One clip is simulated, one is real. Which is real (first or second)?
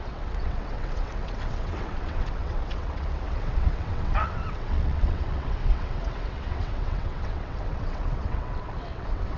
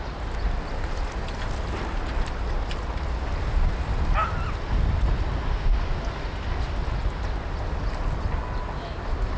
second